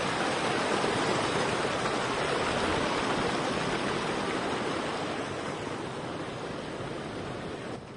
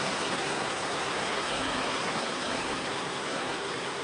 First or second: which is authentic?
first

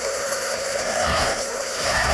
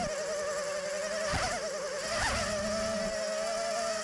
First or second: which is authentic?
second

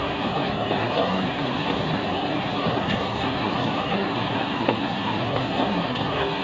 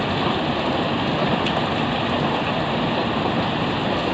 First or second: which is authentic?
second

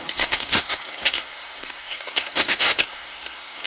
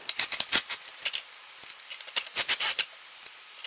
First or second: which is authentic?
second